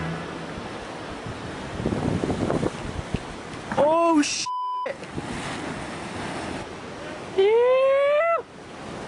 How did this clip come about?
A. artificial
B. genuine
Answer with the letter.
B